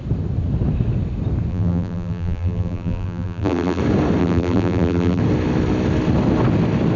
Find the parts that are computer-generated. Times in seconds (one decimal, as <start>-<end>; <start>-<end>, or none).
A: 1.5-3.8; 4.2-5.2